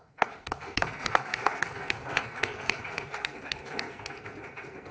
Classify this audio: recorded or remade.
remade